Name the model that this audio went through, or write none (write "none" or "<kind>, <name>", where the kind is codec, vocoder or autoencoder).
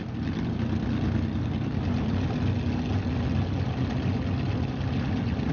none